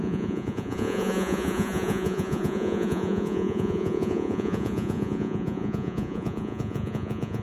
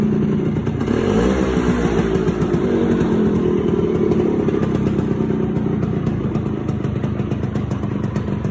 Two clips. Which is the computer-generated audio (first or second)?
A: first